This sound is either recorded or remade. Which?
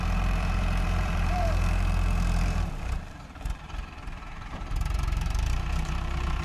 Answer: remade